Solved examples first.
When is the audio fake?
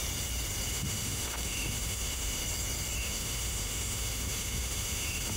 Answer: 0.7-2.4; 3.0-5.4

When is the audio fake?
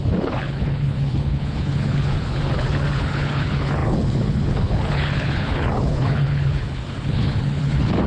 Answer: 0.0-8.1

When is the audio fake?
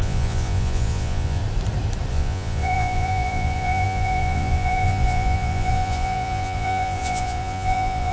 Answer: 0.0-1.4; 2.1-8.1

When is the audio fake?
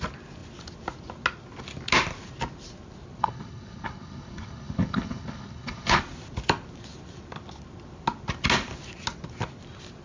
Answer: 3.2-6.0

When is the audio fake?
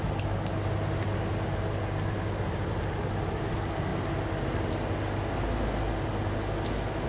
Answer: none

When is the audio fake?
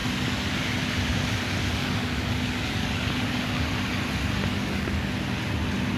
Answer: 1.8-3.7; 4.5-5.1